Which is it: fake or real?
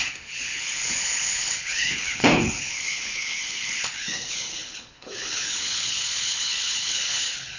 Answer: fake